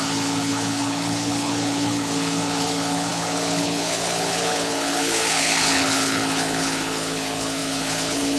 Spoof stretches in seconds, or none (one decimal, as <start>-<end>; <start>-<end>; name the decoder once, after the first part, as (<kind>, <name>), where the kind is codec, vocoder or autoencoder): 0.0-8.4 (codec, HILCodec)